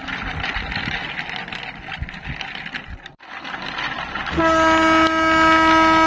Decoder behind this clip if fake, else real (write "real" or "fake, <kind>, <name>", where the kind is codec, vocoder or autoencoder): real